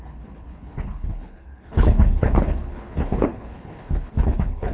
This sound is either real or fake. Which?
fake